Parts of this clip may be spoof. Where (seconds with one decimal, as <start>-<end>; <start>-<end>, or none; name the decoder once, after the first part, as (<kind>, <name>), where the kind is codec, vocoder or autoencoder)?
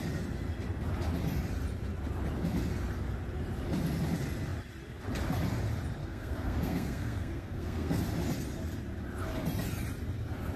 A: 6.0-8.0 (codec, SNAC)